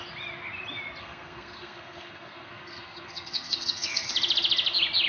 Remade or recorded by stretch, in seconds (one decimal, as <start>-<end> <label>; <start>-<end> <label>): 0.0-1.0 recorded; 1.0-4.1 remade; 4.1-5.1 recorded